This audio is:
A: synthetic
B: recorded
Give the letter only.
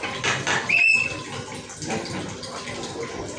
B